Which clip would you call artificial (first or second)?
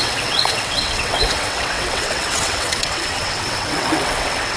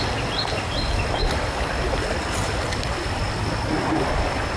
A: first